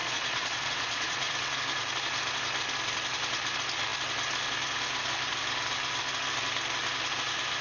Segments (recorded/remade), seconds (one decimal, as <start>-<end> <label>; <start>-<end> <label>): 0.0-1.3 remade; 1.3-7.6 recorded